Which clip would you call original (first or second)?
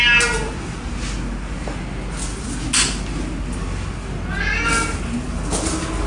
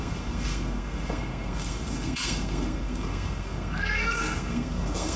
first